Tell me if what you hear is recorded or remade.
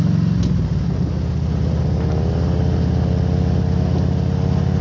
recorded